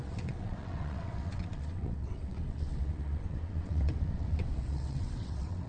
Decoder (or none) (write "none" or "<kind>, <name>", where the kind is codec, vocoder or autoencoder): vocoder, WaveNeXt